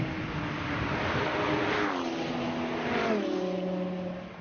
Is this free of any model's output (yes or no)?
yes